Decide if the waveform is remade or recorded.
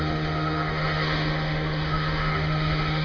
remade